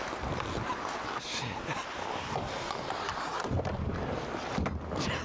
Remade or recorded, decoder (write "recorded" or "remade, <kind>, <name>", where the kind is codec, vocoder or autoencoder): recorded